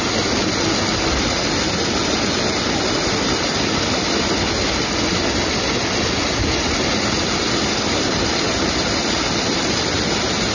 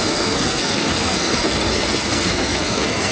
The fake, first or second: second